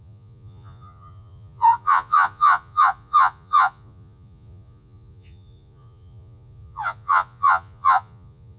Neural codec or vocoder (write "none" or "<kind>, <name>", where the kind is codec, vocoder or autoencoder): vocoder, Vocos